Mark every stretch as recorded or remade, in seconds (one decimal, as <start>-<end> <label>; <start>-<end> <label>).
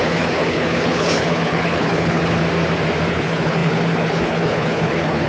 0.0-2.4 remade; 2.4-3.1 recorded; 3.1-5.3 remade